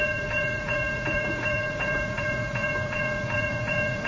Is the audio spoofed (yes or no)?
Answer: yes